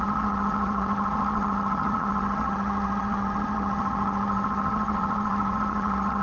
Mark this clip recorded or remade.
remade